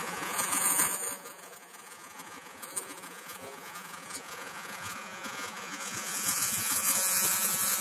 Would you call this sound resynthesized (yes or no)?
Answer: yes